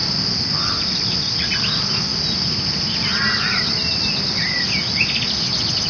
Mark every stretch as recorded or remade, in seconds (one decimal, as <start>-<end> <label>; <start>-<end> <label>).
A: 0.0-5.9 recorded